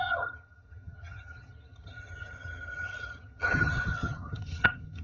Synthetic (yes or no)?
yes